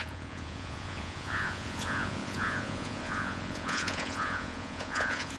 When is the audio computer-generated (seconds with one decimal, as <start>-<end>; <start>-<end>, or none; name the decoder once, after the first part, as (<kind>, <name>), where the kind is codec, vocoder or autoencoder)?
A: 0.0-5.4 (vocoder, Vocos)